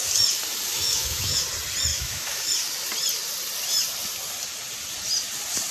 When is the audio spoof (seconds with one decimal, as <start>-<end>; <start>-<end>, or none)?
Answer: 0.7-1.4; 1.9-2.5